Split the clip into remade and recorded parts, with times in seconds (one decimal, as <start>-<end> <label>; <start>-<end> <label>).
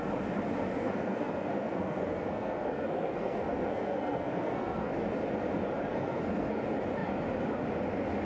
0.0-0.8 recorded; 0.8-4.9 remade; 4.9-5.9 recorded; 5.9-6.6 remade; 6.6-8.2 recorded